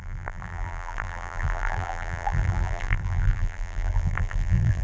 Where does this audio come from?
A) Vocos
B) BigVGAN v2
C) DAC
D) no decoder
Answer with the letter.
B